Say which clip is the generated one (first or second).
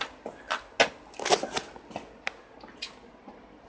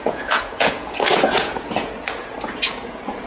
second